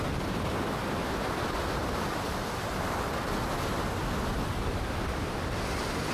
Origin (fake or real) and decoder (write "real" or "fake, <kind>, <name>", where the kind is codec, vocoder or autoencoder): fake, vocoder, BigVGAN v2